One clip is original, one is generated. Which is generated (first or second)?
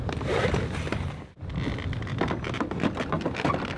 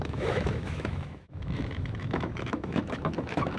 second